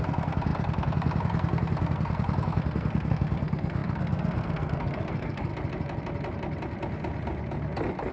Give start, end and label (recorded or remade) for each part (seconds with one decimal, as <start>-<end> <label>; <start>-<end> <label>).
0.0-5.5 remade; 5.5-8.1 recorded